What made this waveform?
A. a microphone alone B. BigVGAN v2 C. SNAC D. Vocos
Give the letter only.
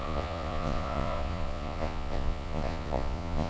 D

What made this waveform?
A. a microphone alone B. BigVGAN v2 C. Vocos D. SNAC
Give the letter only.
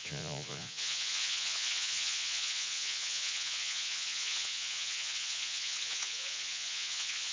C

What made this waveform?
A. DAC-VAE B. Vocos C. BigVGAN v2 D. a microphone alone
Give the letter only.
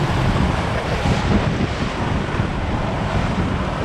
C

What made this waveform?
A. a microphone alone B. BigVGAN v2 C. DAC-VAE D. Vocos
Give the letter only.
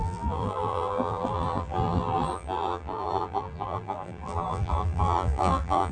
B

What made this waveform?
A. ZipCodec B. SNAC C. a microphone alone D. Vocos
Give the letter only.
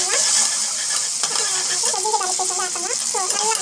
C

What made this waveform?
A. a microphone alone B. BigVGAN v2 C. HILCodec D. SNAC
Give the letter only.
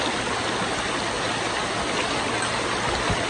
A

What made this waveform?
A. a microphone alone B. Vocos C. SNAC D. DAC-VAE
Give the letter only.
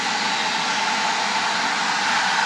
A